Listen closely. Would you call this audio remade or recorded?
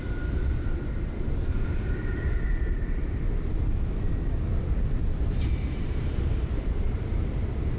remade